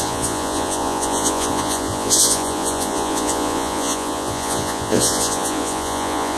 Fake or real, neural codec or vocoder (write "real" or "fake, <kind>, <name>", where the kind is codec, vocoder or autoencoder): fake, vocoder, Vocos